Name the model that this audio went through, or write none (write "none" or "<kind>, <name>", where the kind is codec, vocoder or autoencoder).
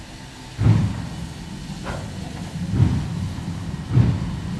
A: none